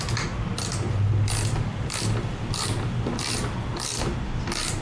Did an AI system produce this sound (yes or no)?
no